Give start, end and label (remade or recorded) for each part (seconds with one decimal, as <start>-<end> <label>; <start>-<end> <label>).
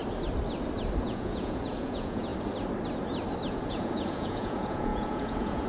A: 0.0-1.0 recorded; 1.0-2.3 remade; 2.3-3.5 recorded; 3.5-5.7 remade